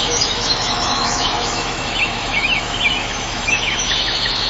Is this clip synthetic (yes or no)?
yes